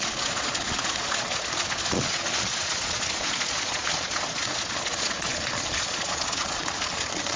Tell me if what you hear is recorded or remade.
remade